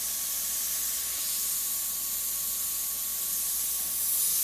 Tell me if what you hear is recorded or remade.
recorded